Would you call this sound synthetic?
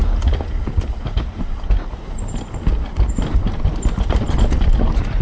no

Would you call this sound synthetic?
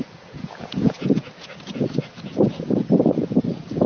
yes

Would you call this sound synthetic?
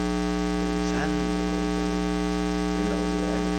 no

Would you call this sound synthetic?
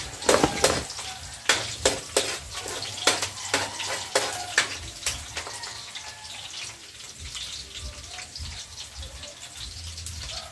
no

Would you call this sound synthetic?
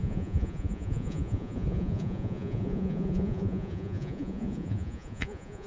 yes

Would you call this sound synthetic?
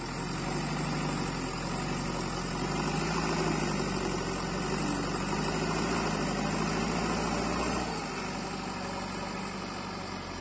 no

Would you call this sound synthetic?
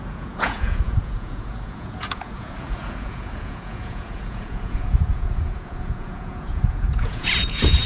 yes